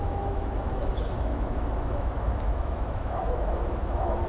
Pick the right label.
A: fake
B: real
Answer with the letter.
A